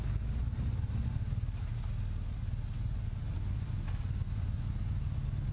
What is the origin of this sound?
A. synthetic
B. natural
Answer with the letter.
B